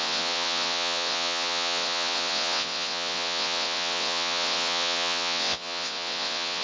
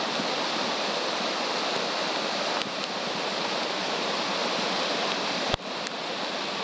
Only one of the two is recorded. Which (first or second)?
second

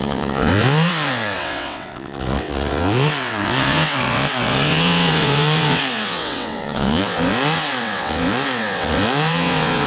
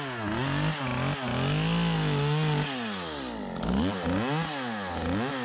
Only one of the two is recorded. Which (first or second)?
second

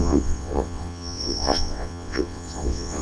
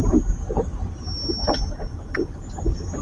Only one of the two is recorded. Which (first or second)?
second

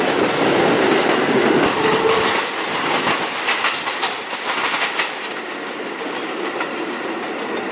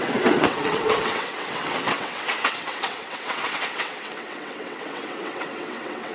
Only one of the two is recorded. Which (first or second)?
first